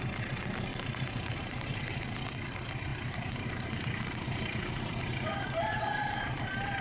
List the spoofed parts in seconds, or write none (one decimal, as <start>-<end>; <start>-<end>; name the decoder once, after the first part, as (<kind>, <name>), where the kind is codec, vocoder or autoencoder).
0.7-2.0 (vocoder, BigVGAN v2); 2.9-6.8